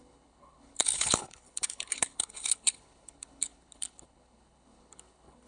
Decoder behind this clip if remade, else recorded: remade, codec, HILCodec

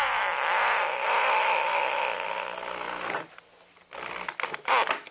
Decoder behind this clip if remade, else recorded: recorded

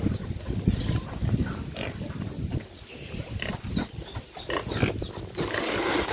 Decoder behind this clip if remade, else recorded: recorded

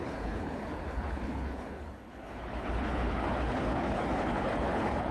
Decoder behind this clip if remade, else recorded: remade, codec, HILCodec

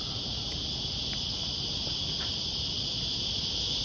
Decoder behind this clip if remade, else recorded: recorded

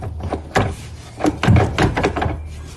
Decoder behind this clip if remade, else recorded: recorded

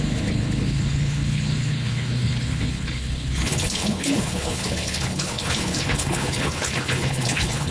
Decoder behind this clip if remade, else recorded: remade, codec, HILCodec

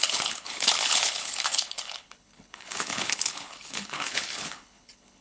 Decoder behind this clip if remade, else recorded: remade, codec, HILCodec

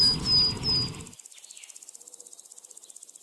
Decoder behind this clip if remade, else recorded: recorded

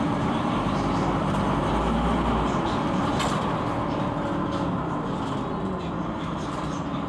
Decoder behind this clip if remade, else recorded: recorded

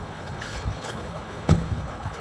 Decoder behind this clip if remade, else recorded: remade, codec, HILCodec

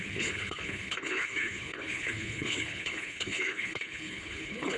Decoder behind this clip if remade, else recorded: remade, codec, HILCodec